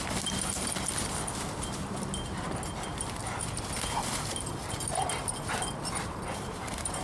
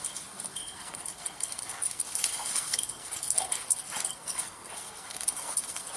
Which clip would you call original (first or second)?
first